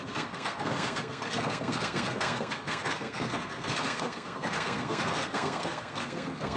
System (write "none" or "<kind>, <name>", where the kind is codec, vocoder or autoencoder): codec, SNAC